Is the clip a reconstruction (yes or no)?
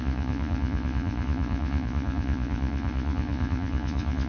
yes